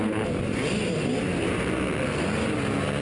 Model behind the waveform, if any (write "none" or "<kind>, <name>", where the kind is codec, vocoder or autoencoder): none